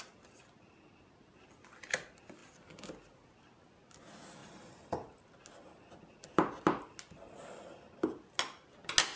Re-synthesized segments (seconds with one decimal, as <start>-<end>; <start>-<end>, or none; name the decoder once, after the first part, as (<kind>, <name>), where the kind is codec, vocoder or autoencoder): none